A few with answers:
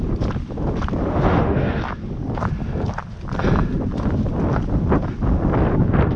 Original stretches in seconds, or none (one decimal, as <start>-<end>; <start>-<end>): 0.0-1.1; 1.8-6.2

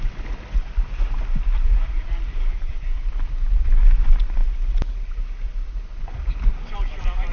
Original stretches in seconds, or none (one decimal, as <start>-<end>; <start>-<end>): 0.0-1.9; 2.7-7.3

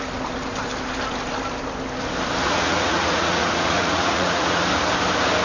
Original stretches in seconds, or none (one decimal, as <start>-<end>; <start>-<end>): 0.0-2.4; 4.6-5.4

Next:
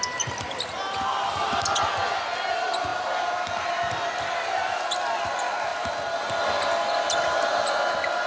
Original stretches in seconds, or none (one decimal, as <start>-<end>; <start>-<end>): 0.0-8.3